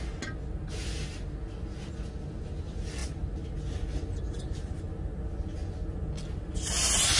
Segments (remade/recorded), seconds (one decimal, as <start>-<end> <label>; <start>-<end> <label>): 0.0-7.2 recorded